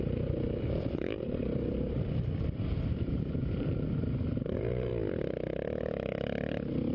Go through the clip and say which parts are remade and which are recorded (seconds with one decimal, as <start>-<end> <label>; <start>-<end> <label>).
0.0-4.9 remade; 4.9-6.9 recorded